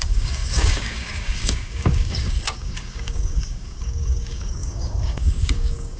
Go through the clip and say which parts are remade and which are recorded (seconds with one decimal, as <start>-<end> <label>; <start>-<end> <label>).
0.0-6.0 remade